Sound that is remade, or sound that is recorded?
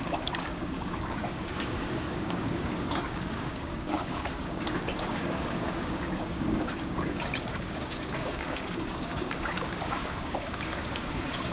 remade